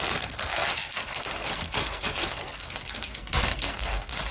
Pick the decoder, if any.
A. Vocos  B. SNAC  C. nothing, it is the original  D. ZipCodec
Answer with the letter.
B